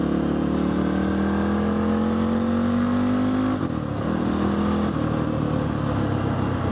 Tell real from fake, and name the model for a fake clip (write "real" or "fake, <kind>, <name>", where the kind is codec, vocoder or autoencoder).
real